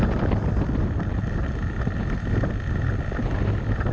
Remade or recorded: recorded